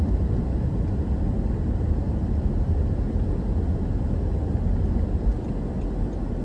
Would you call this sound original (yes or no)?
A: yes